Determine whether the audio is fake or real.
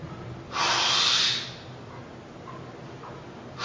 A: real